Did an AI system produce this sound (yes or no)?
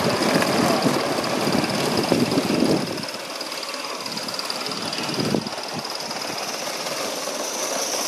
no